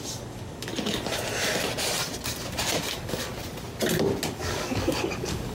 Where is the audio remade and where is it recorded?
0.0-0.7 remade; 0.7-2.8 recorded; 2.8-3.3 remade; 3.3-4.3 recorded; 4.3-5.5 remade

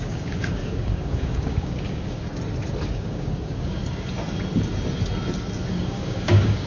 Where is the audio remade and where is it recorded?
0.0-2.3 remade; 2.3-2.9 recorded; 2.9-3.8 remade; 3.8-5.7 recorded; 5.7-6.7 remade

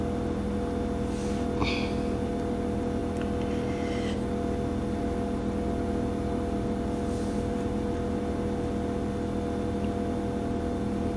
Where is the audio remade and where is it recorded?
0.0-11.2 recorded

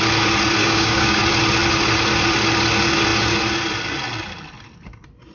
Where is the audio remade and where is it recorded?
0.0-0.6 recorded; 0.6-1.2 remade; 1.2-5.3 recorded